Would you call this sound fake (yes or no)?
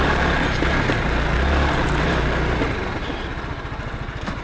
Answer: no